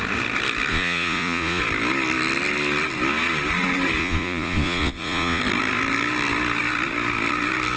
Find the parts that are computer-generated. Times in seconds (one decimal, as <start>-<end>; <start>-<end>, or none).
0.7-1.6; 4.0-5.4